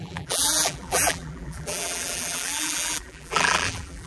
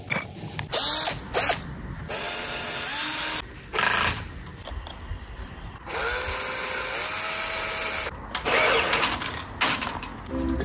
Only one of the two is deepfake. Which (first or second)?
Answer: first